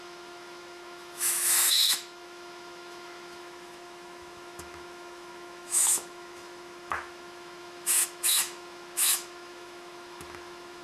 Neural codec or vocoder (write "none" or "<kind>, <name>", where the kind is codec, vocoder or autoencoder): autoencoder, DAC-VAE